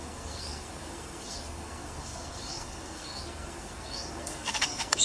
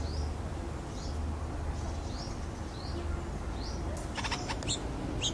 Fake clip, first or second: first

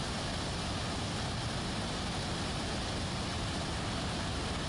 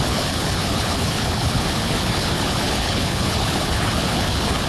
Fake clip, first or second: second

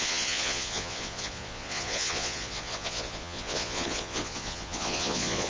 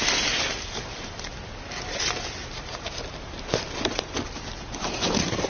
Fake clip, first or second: first